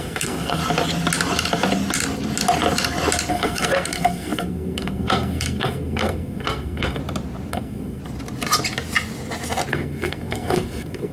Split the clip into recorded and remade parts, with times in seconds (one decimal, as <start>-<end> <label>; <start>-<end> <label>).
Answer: 0.0-0.6 remade; 0.6-3.3 recorded; 3.3-7.0 remade; 7.0-7.5 recorded; 7.5-8.0 remade; 8.0-9.7 recorded; 9.7-11.1 remade

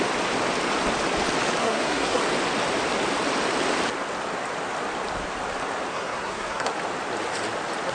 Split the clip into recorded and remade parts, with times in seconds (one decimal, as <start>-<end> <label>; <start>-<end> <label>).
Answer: 0.0-1.6 recorded; 1.6-2.2 remade; 2.2-5.9 recorded; 5.9-6.7 remade; 6.7-7.9 recorded

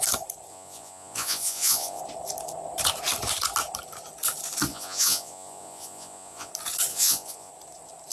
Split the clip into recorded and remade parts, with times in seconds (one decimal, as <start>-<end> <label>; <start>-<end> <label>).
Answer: 0.0-0.5 recorded; 0.5-2.0 remade; 2.0-4.7 recorded; 4.7-6.5 remade; 6.5-6.9 recorded; 6.9-7.5 remade; 7.5-8.1 recorded

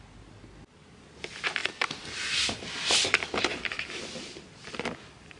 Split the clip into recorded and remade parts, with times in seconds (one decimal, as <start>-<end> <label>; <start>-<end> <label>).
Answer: 0.0-5.4 recorded

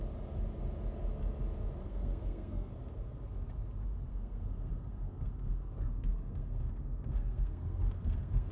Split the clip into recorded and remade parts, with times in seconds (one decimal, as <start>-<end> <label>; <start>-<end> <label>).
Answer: 0.0-1.8 recorded; 1.8-2.7 remade; 2.7-4.1 recorded; 4.1-8.5 remade

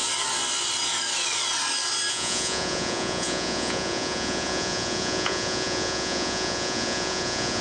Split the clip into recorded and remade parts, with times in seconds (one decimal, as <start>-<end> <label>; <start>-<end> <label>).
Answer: 0.0-2.1 recorded; 2.1-7.6 remade

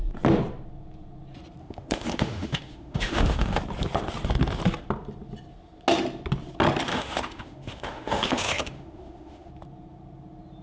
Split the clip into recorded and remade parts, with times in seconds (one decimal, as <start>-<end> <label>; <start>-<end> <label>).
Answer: 0.0-1.6 recorded; 1.6-3.6 remade; 3.6-6.9 recorded; 6.9-9.5 remade; 9.5-10.6 recorded